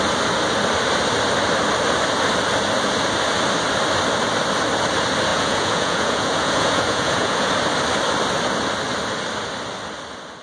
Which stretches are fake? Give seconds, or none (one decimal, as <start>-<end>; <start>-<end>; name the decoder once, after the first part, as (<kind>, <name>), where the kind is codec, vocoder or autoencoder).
5.3-7.5 (vocoder, Vocos)